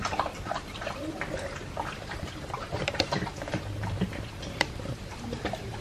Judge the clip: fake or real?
fake